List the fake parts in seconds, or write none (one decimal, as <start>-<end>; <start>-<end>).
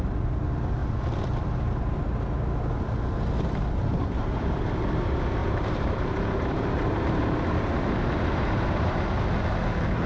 3.9-4.6; 5.4-9.1